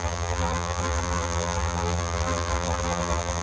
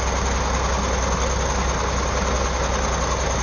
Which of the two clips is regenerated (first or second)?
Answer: first